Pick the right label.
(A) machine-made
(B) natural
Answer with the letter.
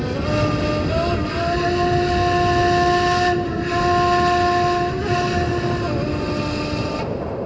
B